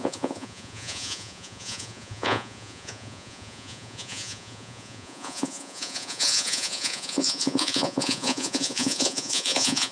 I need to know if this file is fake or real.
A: fake